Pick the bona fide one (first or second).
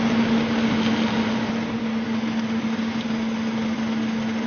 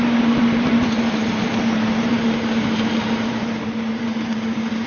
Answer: first